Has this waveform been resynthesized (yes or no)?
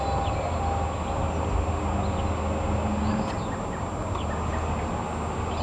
no